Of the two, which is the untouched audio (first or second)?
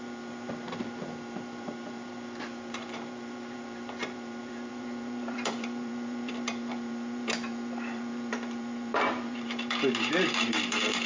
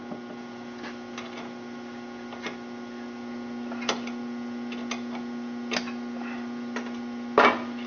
second